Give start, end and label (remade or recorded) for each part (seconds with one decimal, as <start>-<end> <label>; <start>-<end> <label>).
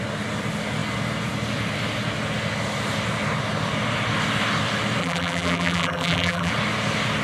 0.0-5.0 recorded; 5.0-6.5 remade; 6.5-7.2 recorded